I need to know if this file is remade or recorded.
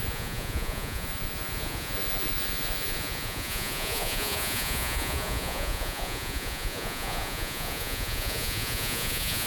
remade